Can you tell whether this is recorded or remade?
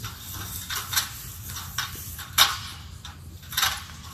recorded